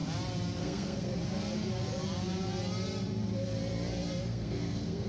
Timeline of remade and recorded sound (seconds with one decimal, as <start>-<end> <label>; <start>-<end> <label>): 0.0-0.6 recorded; 0.6-1.1 remade; 1.1-4.2 recorded; 4.2-5.1 remade